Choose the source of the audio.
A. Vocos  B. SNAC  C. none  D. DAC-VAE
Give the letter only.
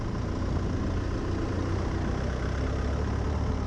C